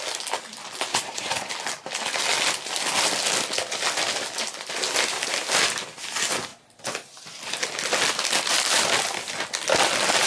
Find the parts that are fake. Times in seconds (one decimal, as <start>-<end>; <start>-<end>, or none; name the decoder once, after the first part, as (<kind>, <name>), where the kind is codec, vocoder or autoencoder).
0.9-1.5 (vocoder, Vocos)